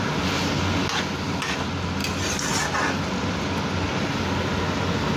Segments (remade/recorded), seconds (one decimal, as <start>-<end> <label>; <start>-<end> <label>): 0.0-5.2 recorded